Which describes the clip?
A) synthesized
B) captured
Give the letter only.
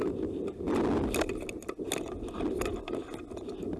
B